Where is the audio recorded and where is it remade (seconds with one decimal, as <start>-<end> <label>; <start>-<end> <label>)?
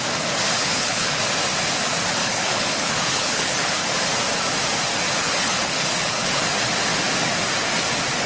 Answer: 0.0-0.6 recorded; 0.6-1.2 remade; 1.2-2.2 recorded; 2.2-3.9 remade; 3.9-5.2 recorded; 5.2-6.4 remade; 6.4-8.3 recorded